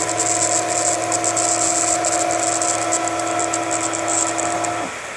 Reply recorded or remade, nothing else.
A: recorded